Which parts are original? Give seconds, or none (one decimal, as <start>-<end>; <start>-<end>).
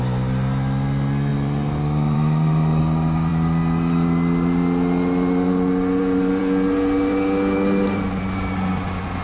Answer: 0.0-1.3; 2.8-9.2